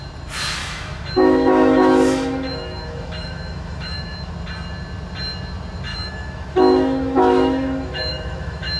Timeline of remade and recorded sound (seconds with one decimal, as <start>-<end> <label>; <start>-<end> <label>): 0.0-0.6 recorded; 0.6-4.3 remade; 4.3-5.9 recorded; 5.9-8.8 remade